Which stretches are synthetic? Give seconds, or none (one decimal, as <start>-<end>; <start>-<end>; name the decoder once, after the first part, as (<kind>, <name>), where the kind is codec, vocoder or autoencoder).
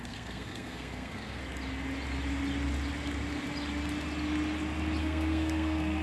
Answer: 0.0-1.4 (codec, SNAC); 5.0-6.0